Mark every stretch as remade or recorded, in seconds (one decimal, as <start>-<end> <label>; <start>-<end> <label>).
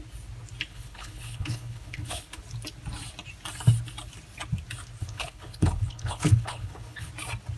0.0-0.7 recorded; 0.7-2.4 remade; 2.4-5.0 recorded; 5.0-7.1 remade; 7.1-7.6 recorded